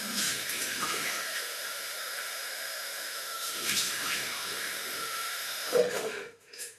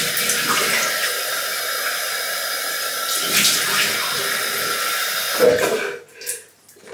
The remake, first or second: first